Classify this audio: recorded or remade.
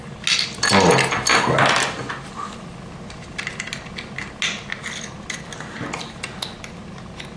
recorded